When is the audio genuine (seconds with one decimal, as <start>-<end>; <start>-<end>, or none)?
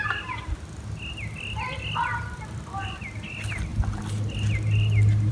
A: 0.0-2.1; 3.1-5.3